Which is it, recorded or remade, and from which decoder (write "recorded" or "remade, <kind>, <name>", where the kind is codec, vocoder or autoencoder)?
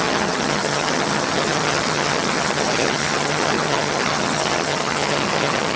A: remade, vocoder, HiFi-GAN